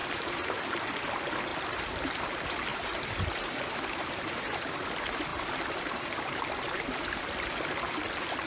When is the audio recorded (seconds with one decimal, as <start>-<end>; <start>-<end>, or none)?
0.6-1.5; 2.1-2.7; 4.8-5.3; 7.5-8.5